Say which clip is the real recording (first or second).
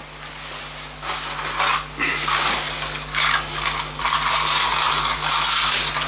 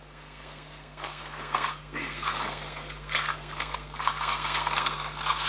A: first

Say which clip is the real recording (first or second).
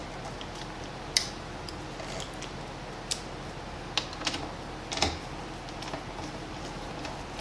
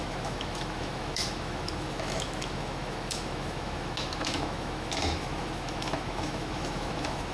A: first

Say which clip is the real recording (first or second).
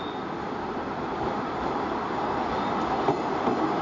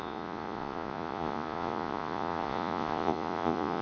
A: first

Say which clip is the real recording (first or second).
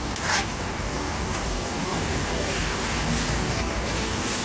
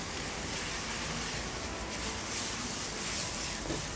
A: second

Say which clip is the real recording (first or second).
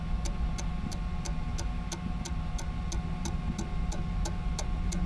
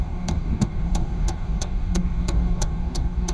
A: first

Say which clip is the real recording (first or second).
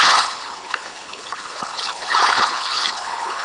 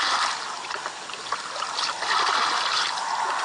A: second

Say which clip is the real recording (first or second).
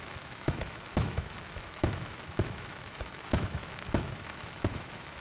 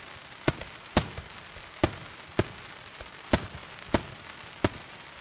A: second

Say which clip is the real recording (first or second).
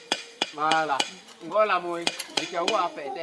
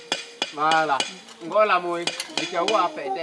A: second